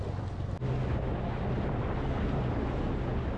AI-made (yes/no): no